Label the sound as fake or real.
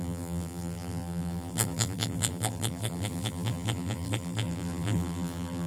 fake